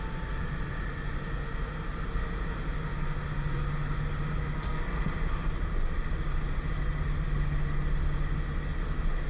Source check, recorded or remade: recorded